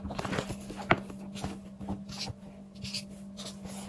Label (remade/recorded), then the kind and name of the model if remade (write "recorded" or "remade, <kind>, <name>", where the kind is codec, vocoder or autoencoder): recorded